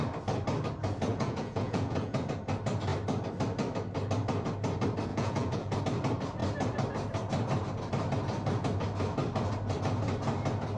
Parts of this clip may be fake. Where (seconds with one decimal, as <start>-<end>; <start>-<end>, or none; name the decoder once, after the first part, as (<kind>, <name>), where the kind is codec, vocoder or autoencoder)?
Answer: 1.1-2.2 (vocoder, Vocos); 5.1-5.8